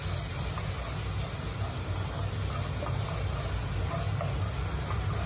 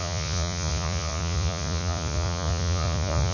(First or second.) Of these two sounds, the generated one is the second